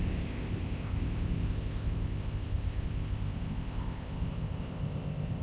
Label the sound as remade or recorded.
remade